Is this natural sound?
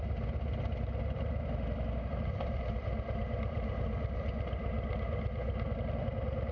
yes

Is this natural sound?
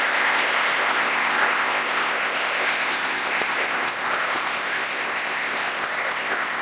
no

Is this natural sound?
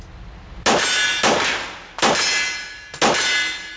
yes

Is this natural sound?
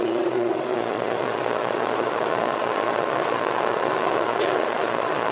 no